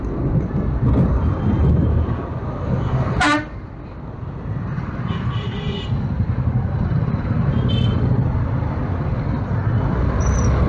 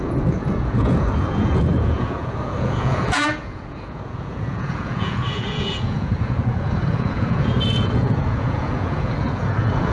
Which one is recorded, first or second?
first